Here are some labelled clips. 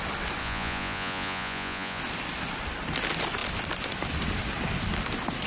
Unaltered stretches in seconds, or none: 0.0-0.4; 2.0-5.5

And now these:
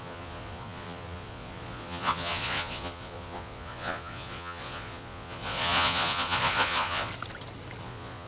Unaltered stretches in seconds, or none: 7.1-7.8

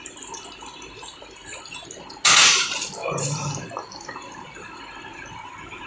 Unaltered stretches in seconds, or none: 0.0-5.9

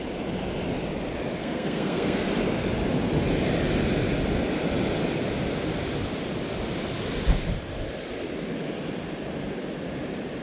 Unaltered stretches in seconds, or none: 0.0-1.4; 2.3-10.4

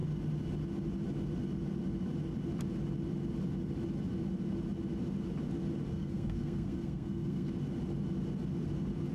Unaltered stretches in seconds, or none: 0.0-5.9; 7.5-9.1